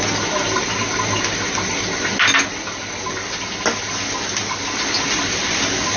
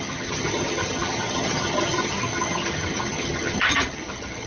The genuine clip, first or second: first